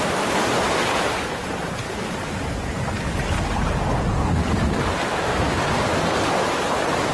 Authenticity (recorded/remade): recorded